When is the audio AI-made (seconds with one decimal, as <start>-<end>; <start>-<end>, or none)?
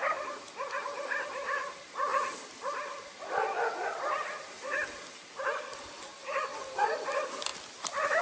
none